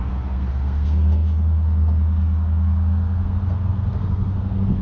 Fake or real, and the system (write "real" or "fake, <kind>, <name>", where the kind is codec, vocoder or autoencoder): fake, codec, SNAC